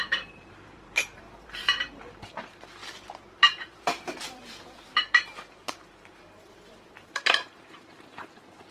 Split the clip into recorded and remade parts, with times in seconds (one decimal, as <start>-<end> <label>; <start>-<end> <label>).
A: 0.0-2.8 remade; 2.8-3.4 recorded; 3.4-8.7 remade